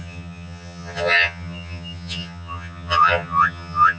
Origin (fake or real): fake